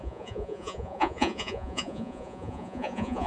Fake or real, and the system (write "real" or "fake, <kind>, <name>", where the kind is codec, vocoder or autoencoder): fake, vocoder, Vocos